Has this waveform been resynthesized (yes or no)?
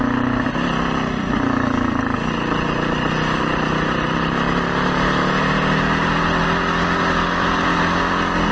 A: no